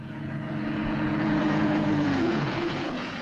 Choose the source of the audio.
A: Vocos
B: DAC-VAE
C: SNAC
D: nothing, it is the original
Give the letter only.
A